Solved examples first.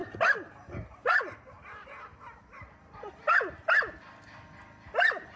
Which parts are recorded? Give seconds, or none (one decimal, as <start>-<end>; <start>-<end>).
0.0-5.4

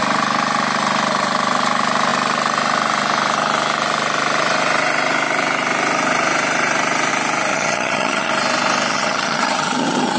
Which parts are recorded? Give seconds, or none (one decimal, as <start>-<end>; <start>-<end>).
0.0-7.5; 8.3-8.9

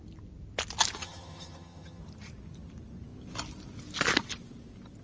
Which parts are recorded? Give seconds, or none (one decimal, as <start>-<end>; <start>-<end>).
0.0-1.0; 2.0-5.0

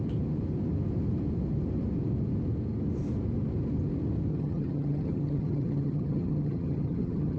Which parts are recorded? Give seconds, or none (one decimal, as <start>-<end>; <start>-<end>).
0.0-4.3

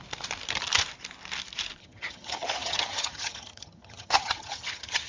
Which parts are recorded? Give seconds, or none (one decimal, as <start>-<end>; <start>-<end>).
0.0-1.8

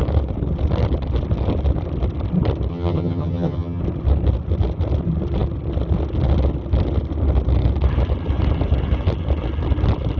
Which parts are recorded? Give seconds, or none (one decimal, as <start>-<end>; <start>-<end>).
0.0-2.7; 3.8-10.2

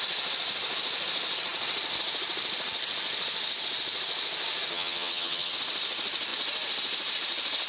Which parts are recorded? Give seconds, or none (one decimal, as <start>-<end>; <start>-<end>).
0.0-4.7; 5.5-7.7

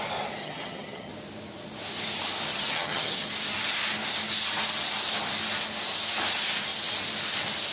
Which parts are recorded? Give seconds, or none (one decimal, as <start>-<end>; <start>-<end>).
0.0-0.4; 1.1-2.5; 3.3-7.7